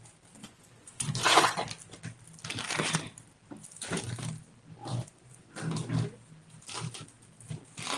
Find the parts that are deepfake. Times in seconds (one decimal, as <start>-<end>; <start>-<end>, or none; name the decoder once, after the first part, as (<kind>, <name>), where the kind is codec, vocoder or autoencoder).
0.4-1.6 (vocoder, Vocos); 4.9-5.4